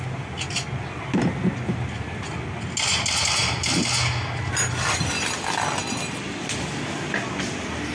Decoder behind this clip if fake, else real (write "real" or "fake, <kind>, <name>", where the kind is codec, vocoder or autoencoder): real